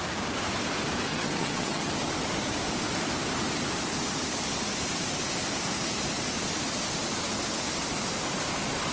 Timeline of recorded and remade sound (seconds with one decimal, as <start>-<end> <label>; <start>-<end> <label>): 0.0-1.1 recorded; 1.1-1.9 remade; 1.9-8.9 recorded